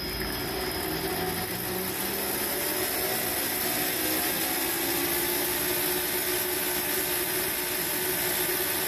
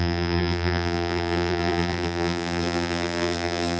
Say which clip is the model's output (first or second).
second